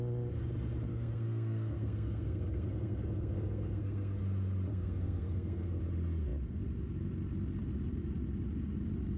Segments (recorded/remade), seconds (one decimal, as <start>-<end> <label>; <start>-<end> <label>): 0.0-0.9 recorded; 0.9-4.2 remade; 4.2-4.7 recorded; 4.7-5.8 remade; 5.8-9.2 recorded